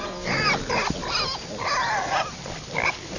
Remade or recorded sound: recorded